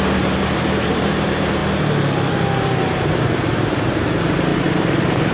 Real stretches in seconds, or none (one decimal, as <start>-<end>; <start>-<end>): 1.6-2.6